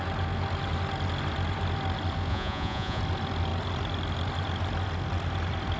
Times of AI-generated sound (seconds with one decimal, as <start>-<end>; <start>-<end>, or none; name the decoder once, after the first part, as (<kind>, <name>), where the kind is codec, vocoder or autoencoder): 2.3-3.0 (vocoder, Vocos)